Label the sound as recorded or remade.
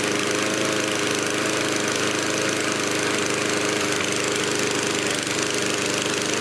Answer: recorded